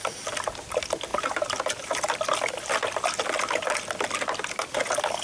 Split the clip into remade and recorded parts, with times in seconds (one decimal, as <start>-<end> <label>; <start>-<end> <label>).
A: 0.0-5.2 recorded